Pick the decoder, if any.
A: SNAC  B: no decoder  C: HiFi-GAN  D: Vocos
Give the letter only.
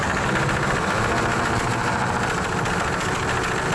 B